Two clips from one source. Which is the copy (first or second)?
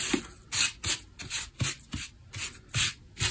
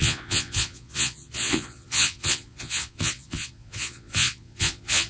second